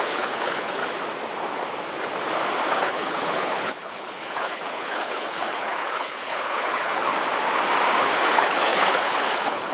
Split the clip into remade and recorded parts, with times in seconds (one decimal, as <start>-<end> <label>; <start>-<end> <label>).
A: 0.0-0.8 remade; 0.8-2.7 recorded; 2.7-7.1 remade; 7.1-8.0 recorded; 8.0-9.7 remade